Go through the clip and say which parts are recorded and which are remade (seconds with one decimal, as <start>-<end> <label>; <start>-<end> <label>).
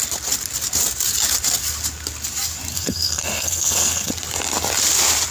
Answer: 0.0-2.7 recorded; 2.7-4.1 remade; 4.1-5.3 recorded